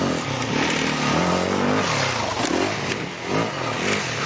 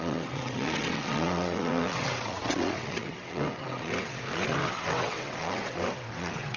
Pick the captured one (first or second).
first